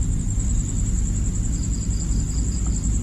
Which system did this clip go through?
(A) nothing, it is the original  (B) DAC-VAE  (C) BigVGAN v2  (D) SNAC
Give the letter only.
A